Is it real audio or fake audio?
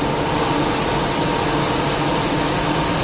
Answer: real